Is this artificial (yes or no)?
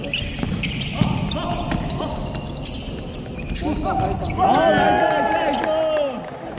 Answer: no